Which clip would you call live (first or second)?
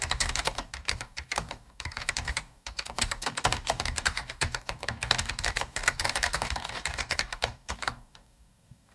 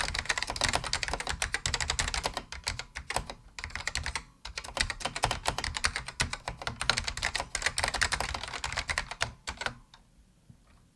second